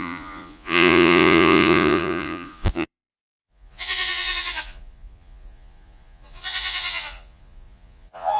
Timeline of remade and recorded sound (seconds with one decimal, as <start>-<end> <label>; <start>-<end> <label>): 0.0-8.4 remade